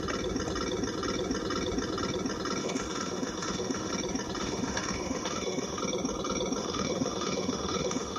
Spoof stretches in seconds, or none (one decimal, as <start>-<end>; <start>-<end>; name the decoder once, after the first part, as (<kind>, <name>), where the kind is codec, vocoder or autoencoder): 2.6-3.9 (autoencoder, DAC-VAE); 4.4-5.8; 6.6-8.2